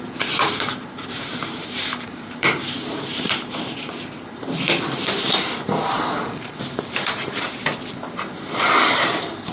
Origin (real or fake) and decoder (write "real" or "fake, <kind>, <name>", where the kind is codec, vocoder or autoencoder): fake, vocoder, BigVGAN v2